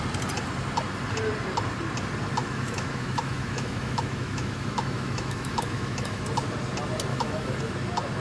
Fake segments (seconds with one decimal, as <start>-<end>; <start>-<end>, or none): 2.4-6.2; 7.1-7.6